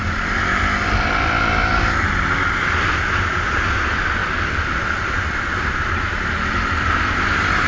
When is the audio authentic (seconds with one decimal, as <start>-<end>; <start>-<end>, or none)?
0.0-7.7